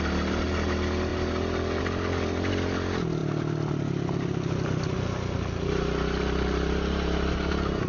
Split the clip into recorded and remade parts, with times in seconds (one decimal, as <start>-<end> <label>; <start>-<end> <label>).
0.0-7.9 recorded